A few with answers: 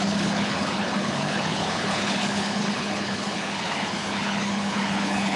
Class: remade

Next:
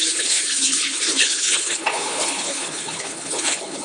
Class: remade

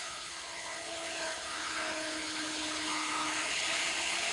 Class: remade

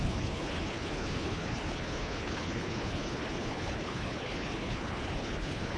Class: remade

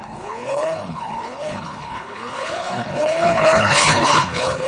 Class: remade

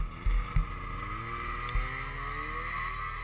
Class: recorded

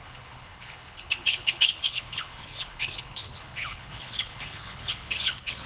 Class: remade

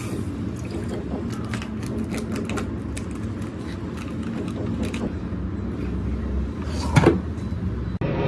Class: recorded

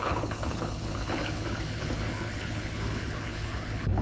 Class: remade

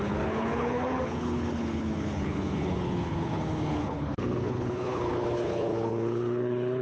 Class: remade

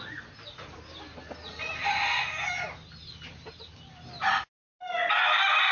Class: recorded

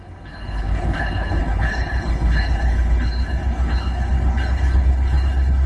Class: remade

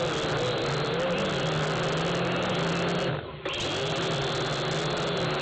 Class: recorded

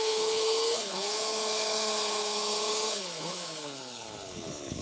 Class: remade